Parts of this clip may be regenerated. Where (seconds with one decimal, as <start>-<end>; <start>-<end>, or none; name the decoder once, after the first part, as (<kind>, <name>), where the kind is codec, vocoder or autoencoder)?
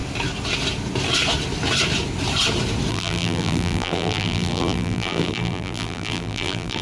2.9-6.8 (vocoder, BigVGAN v2)